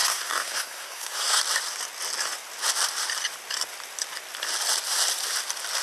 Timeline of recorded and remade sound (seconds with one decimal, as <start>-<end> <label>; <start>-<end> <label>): 0.0-1.4 remade; 1.4-5.8 recorded